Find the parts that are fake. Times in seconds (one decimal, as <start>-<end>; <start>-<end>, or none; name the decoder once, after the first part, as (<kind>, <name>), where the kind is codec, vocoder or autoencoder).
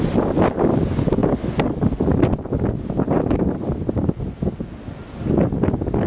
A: none